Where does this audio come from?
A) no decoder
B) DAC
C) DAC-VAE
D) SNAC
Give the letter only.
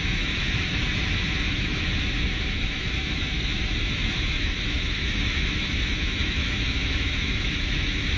C